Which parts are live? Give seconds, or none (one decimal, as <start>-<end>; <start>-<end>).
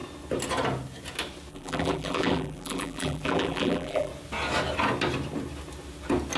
0.0-1.5; 4.1-6.4